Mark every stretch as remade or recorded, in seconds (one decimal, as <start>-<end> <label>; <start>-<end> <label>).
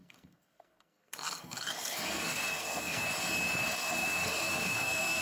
0.0-3.1 remade; 3.1-3.8 recorded; 3.8-5.2 remade